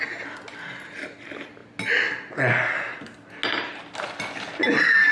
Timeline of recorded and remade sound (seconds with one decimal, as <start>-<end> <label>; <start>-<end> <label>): 0.0-5.1 recorded